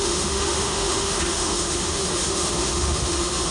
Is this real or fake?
fake